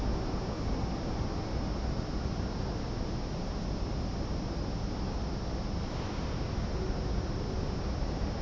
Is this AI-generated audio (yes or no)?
no